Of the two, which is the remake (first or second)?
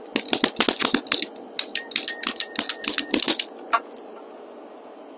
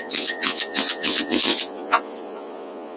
second